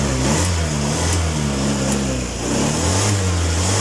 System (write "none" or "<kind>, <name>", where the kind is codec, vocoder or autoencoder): none